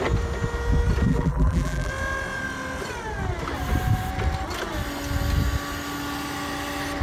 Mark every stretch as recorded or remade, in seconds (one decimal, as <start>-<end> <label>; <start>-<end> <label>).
0.0-1.1 recorded; 1.1-1.9 remade; 1.9-7.0 recorded